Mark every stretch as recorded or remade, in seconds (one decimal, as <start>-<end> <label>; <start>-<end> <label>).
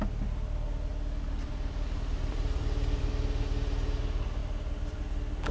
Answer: 0.0-0.9 recorded; 0.9-3.1 remade; 3.1-4.4 recorded; 4.4-5.0 remade; 5.0-5.5 recorded